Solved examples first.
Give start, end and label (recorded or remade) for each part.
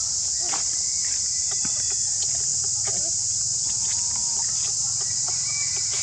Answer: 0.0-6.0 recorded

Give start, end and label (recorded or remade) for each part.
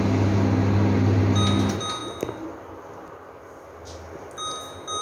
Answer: 0.0-5.0 recorded